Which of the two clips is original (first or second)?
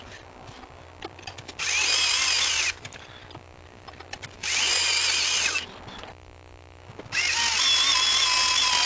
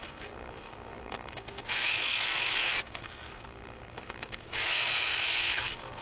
first